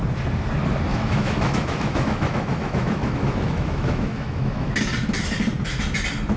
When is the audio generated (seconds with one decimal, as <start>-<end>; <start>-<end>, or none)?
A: 0.9-4.7